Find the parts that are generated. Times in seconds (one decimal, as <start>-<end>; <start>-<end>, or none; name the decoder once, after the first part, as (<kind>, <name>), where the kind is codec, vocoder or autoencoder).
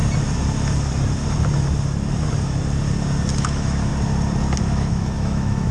3.4-3.9 (autoencoder, DAC-VAE); 4.6-5.7